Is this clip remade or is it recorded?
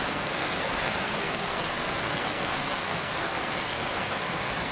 remade